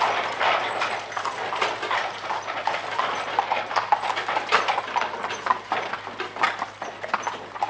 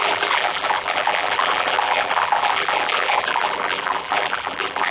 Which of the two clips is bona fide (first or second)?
first